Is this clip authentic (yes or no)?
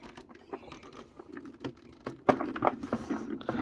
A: yes